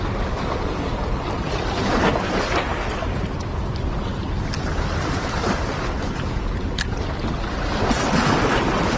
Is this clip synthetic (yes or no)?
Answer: no